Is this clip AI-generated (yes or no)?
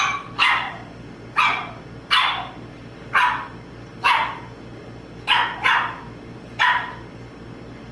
no